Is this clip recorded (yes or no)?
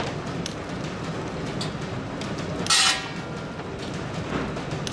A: yes